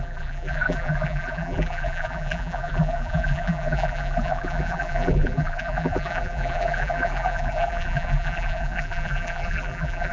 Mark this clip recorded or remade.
remade